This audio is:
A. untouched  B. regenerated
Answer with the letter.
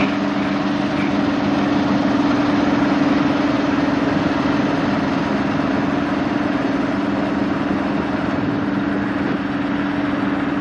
A